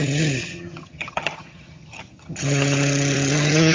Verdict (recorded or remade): remade